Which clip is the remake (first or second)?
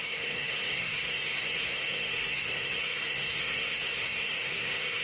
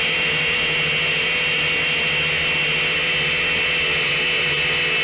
first